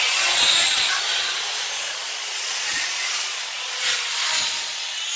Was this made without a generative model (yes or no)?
no